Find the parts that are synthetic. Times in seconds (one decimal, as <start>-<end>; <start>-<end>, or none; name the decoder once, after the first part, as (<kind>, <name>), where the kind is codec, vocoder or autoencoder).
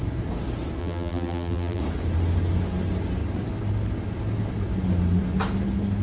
0.8-1.8 (vocoder, BigVGAN v2)